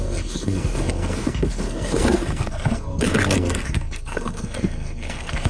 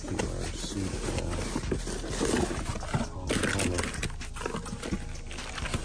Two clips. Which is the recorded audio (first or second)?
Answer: second